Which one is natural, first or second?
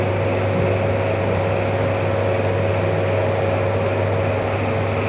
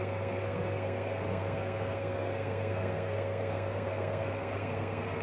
first